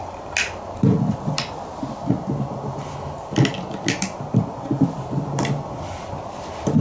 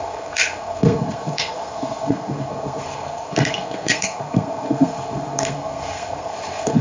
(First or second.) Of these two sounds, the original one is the first